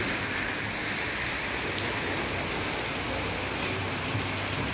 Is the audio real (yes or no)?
yes